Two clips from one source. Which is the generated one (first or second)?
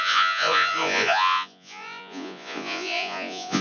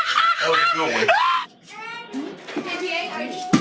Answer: first